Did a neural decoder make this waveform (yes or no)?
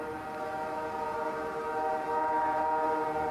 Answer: no